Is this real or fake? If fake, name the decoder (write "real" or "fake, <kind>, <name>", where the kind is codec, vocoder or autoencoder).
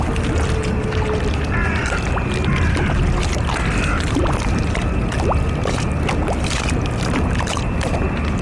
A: real